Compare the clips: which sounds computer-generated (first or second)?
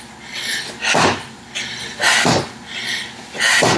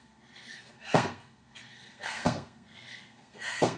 second